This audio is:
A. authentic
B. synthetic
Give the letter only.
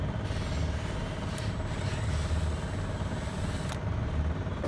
A